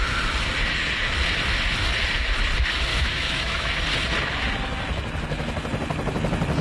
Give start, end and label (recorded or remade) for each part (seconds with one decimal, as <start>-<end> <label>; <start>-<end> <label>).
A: 0.0-2.9 recorded; 2.9-3.7 remade; 3.7-6.6 recorded